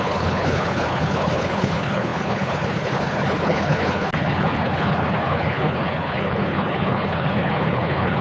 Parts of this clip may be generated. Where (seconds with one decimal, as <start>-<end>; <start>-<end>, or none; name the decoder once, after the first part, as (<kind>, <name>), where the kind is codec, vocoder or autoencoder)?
0.0-8.2 (codec, HILCodec)